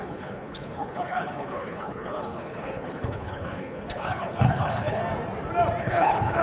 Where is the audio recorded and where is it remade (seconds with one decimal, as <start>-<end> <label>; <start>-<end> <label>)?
0.0-5.0 remade; 5.0-5.8 recorded; 5.8-6.4 remade